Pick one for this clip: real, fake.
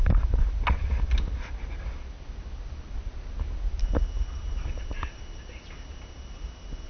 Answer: real